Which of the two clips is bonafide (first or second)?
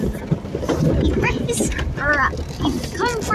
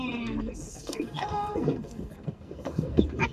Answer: first